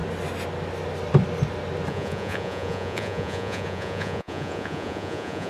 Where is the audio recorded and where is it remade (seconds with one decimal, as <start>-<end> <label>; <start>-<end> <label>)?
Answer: 0.0-1.9 recorded; 1.9-5.5 remade